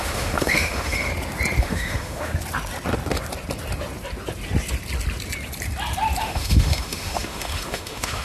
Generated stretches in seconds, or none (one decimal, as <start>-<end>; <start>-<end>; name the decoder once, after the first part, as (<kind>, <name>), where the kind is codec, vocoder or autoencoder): 0.0-1.1 (autoencoder, DAC-VAE); 1.6-2.3; 6.2-8.2